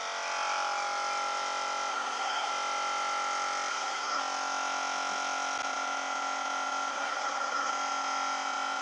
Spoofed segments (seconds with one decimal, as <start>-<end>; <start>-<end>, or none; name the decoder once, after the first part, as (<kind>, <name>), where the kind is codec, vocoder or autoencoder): 1.9-2.5 (codec, SNAC); 3.7-4.2; 6.9-7.7